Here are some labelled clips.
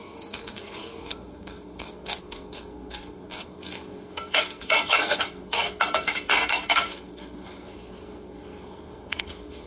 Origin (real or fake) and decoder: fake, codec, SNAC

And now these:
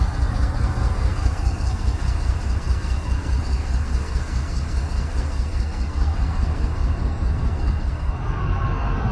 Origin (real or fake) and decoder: fake, codec, SNAC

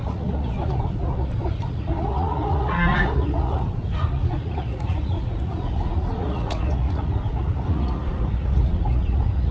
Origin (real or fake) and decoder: fake, vocoder, Vocos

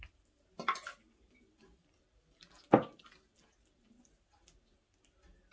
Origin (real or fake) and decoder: real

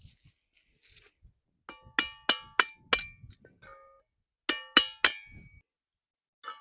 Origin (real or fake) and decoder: real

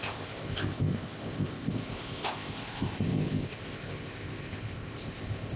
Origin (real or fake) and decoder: fake, codec, ZipCodec